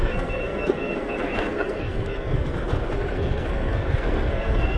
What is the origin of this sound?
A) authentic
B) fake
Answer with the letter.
B